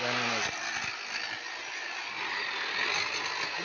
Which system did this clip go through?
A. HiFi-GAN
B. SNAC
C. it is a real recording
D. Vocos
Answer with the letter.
C